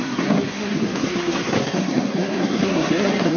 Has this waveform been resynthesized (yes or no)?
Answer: yes